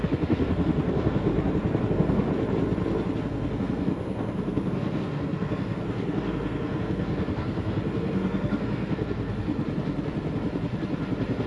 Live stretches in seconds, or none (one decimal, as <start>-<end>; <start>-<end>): 1.3-1.9; 2.3-3.2; 9.5-11.5